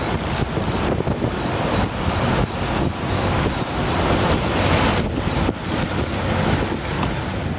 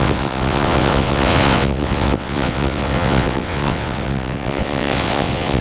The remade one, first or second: second